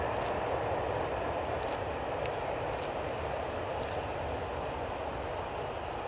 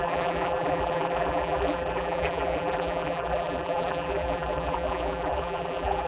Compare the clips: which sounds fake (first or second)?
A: second